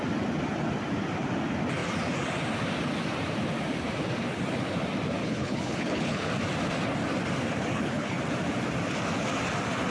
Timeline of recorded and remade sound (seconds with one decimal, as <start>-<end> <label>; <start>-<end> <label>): 0.0-5.2 recorded; 5.2-6.3 remade; 6.3-7.7 recorded; 7.7-8.2 remade; 8.2-9.9 recorded